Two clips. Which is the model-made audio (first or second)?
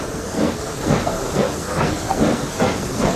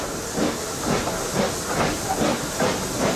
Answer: first